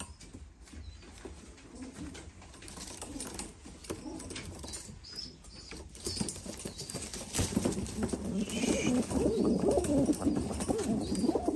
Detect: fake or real real